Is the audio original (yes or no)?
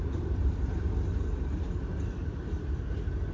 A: yes